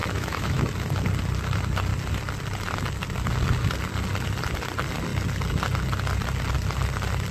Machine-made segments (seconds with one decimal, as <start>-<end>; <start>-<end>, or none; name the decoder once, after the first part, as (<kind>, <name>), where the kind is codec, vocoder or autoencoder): 0.0-0.6 (autoencoder, DAC-VAE)